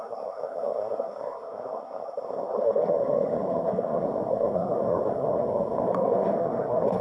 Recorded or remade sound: remade